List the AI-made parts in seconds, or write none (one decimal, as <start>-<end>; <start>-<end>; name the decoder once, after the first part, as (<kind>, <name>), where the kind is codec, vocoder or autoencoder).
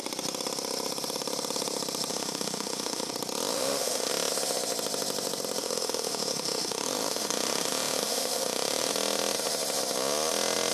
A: 2.1-3.1 (autoencoder, DAC-VAE); 3.5-4.1; 5.6-8.9